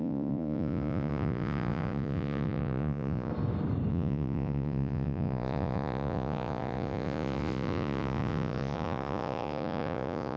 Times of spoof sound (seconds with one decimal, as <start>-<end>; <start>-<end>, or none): 0.0-3.3; 3.9-10.4